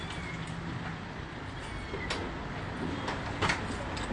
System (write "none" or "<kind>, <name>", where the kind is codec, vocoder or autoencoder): none